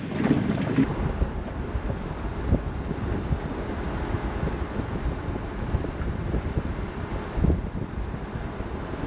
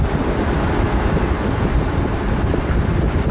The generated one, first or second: second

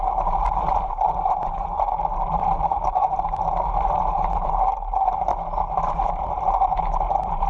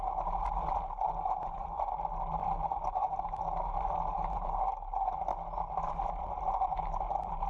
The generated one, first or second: first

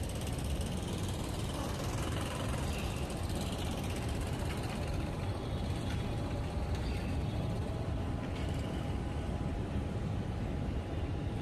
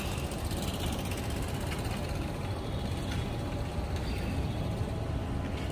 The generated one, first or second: first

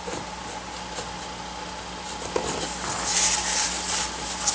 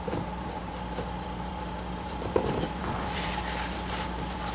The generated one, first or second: second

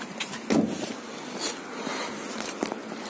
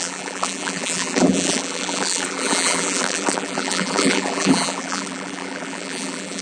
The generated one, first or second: second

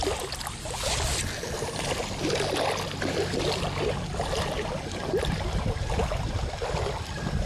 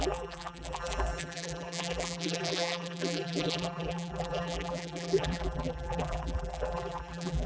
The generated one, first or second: second